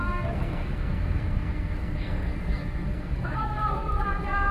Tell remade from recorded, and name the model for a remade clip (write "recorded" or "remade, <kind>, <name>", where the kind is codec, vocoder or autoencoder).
remade, codec, SNAC